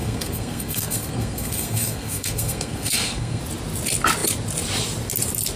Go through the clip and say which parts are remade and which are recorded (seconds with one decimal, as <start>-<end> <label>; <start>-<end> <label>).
0.0-3.4 remade; 3.4-5.6 recorded